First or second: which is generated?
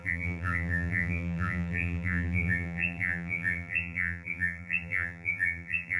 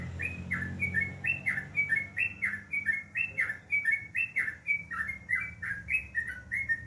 first